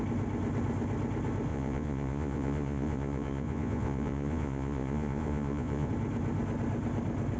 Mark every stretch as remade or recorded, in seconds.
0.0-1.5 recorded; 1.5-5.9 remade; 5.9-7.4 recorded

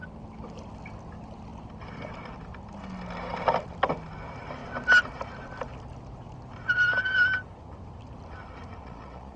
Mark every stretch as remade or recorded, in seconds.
0.0-8.8 recorded; 8.8-9.4 remade

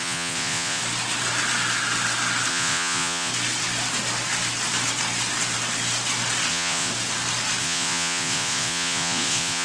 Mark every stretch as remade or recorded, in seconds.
0.0-0.8 remade; 0.8-2.5 recorded; 2.5-3.3 remade; 3.3-6.5 recorded; 6.5-6.9 remade; 6.9-7.6 recorded; 7.6-9.6 remade

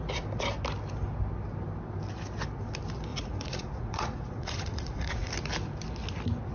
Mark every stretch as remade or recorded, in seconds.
0.0-3.1 recorded; 3.1-5.3 remade; 5.3-6.5 recorded

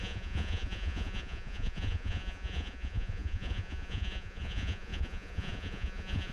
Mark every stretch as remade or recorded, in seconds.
0.0-6.3 remade

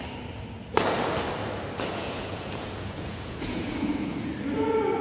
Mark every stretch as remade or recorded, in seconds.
0.0-1.9 recorded; 1.9-4.3 remade; 4.3-5.0 recorded